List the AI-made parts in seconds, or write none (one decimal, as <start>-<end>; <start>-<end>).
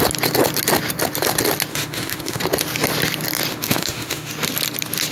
1.7-2.4; 3.5-4.3